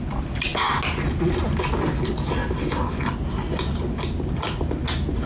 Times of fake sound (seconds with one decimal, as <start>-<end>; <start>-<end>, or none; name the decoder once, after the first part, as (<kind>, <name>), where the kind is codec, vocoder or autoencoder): none